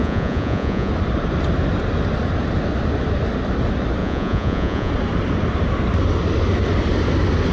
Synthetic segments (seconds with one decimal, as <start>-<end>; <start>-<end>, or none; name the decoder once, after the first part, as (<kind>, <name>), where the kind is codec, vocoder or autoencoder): 0.0-0.9 (vocoder, Vocos); 4.0-4.9

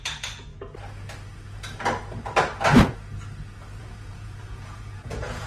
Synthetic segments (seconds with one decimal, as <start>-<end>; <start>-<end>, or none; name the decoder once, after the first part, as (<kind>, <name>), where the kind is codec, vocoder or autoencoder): 0.0-0.5 (vocoder, Vocos); 3.8-5.5

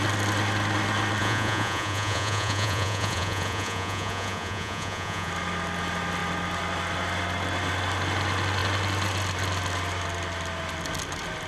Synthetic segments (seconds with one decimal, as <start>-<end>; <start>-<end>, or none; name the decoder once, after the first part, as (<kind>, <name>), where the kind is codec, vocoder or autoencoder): 1.2-5.3 (vocoder, Vocos)